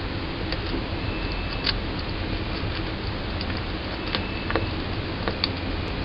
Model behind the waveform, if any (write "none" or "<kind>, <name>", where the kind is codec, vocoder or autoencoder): none